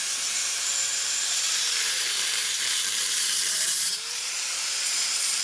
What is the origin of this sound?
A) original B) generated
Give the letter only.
B